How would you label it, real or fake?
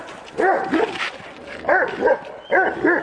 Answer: real